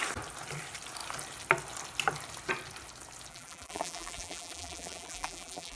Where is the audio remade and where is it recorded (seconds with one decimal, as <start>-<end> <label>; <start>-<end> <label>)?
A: 0.0-3.3 recorded; 3.3-5.8 remade